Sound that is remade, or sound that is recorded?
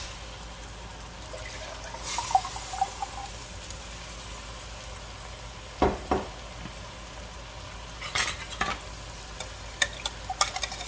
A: recorded